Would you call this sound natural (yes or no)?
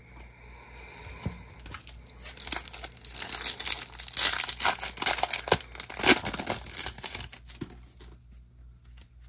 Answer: yes